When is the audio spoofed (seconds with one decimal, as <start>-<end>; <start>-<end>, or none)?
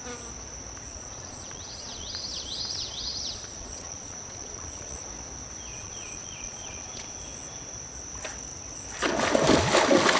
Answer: 0.9-5.0; 5.7-7.2